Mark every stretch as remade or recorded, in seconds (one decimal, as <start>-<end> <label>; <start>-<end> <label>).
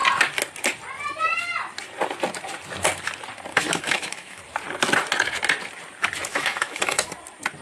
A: 0.0-3.5 recorded; 3.5-4.4 remade; 4.4-6.3 recorded; 6.3-7.1 remade; 7.1-7.6 recorded